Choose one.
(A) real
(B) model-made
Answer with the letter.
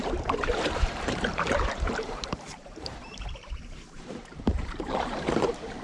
B